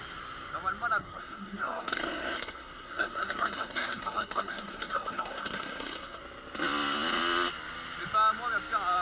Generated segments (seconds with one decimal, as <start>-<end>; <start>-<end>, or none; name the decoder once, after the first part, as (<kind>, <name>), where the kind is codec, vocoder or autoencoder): 1.0-6.2 (codec, SNAC)